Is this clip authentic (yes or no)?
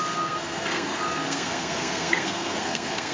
no